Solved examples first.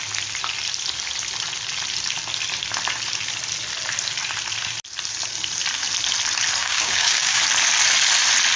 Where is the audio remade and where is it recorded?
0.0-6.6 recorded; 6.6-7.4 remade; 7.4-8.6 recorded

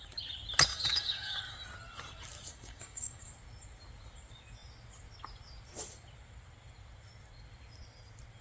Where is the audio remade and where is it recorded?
0.0-0.7 recorded; 0.7-1.4 remade; 1.4-2.5 recorded; 2.5-3.3 remade; 3.3-8.4 recorded

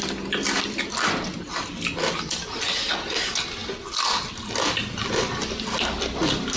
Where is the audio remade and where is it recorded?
0.0-6.6 recorded

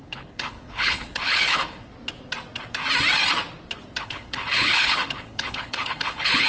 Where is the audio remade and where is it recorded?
0.0-1.9 remade; 1.9-4.0 recorded; 4.0-6.5 remade